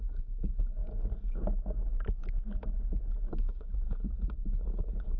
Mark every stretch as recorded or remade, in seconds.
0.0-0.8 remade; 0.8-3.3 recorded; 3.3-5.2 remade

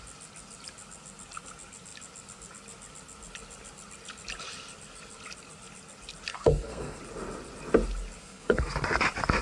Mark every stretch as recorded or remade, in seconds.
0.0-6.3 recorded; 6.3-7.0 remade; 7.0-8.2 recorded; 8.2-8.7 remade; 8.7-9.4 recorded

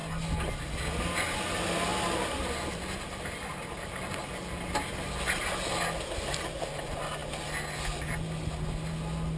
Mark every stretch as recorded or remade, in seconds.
0.0-1.9 recorded; 1.9-3.6 remade; 3.6-9.4 recorded

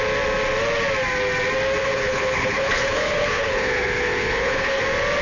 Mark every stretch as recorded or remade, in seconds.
0.0-1.8 recorded; 1.8-4.8 remade; 4.8-5.2 recorded

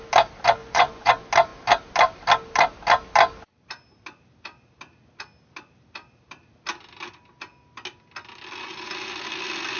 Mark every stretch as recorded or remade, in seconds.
0.0-0.6 recorded; 0.6-1.1 remade; 1.1-9.8 recorded